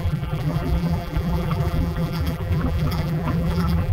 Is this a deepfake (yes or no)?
yes